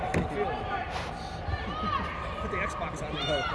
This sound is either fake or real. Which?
real